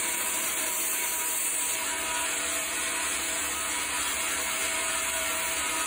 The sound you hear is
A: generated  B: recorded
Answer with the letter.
A